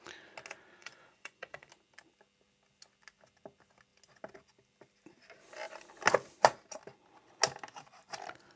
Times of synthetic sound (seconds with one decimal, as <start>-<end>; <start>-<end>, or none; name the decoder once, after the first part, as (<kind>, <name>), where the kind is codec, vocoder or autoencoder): 0.8-1.7 (vocoder, Vocos)